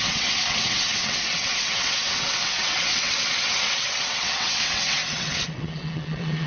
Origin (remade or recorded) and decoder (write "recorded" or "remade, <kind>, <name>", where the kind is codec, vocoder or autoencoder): remade, vocoder, WaveNeXt